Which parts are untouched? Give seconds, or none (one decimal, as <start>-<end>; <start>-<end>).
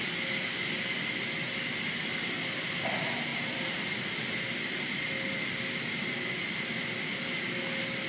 0.0-3.3; 3.8-8.1